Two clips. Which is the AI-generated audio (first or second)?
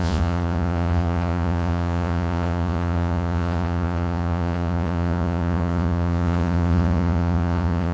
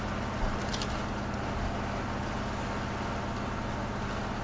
first